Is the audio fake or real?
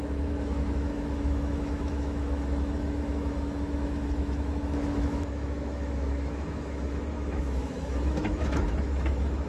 fake